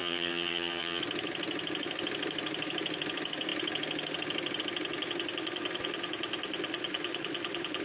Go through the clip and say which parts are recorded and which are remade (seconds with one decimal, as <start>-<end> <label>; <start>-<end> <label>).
0.0-1.0 remade; 1.0-7.8 recorded